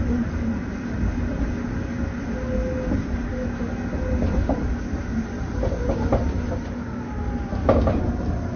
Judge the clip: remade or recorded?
recorded